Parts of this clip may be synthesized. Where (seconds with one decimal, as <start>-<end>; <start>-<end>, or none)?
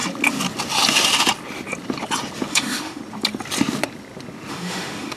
2.5-3.0; 4.5-5.2